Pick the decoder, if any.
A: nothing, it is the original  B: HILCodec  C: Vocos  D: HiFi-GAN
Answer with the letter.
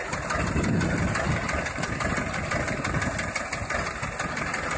A